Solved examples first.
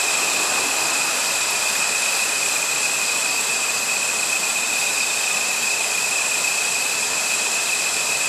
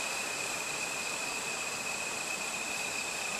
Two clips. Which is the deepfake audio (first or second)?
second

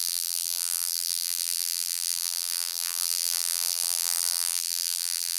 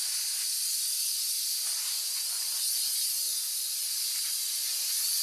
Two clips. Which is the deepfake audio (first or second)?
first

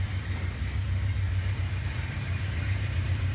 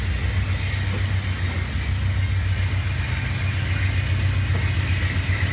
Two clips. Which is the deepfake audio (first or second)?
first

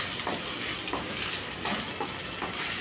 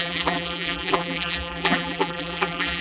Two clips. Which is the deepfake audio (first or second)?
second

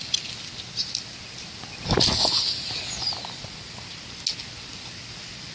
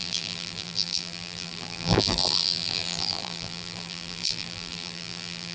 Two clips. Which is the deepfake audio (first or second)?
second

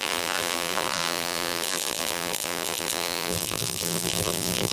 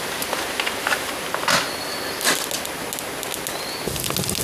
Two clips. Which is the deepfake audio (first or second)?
first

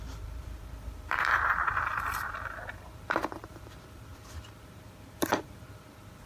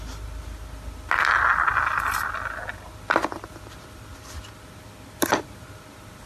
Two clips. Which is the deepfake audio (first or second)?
first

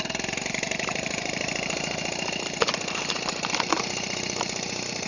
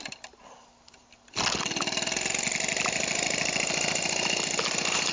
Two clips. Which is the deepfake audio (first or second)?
first